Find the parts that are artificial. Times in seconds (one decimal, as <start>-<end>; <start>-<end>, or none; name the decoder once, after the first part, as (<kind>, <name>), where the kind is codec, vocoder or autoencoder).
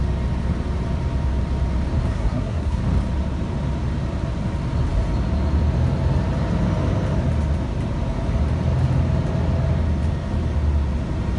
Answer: 2.1-2.8 (codec, SNAC)